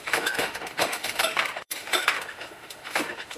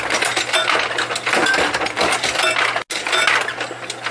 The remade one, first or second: first